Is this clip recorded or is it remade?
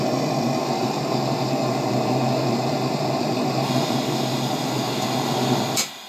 recorded